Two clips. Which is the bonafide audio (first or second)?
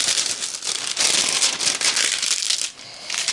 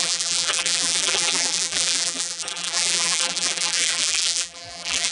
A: first